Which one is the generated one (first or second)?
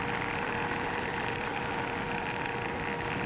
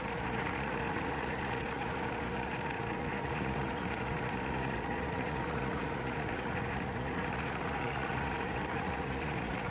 second